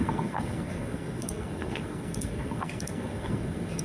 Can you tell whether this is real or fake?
fake